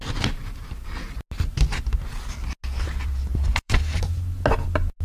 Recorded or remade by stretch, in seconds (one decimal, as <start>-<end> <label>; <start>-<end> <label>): 0.0-3.3 recorded; 3.3-4.0 remade; 4.0-5.0 recorded